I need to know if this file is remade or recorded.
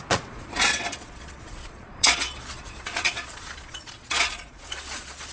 remade